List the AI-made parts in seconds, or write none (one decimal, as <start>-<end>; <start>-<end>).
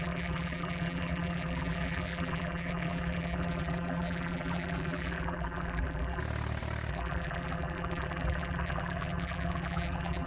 0.0-6.2; 6.9-10.3